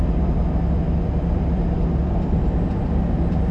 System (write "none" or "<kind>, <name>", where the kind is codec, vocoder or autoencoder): none